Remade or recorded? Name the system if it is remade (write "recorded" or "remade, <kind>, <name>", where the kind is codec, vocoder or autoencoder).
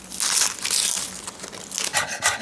recorded